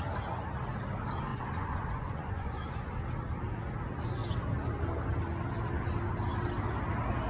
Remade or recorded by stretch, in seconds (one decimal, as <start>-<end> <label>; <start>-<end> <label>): 0.0-1.3 recorded; 1.3-2.9 remade; 2.9-7.3 recorded